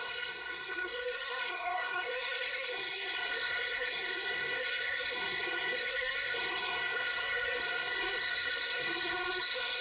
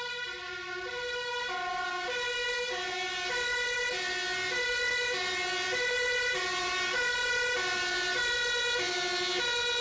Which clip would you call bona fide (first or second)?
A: second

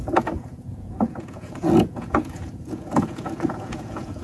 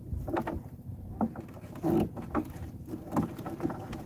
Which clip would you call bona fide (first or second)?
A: second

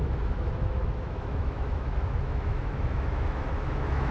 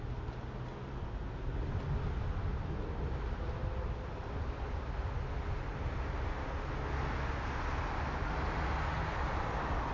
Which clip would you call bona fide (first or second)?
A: second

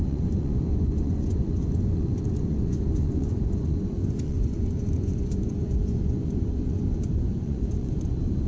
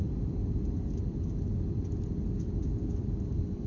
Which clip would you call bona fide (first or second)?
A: second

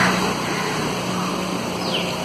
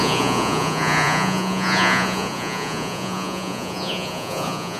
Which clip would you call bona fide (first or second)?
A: first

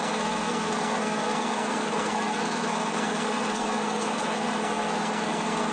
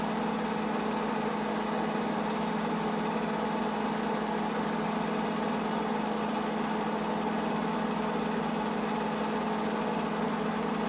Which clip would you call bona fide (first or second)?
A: second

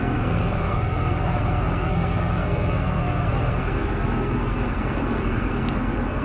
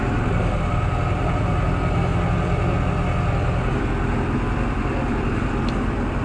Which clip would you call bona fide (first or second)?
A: second